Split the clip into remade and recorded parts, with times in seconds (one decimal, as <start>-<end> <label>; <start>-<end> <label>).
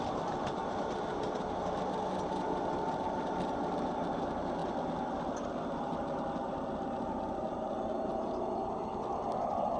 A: 0.0-9.8 recorded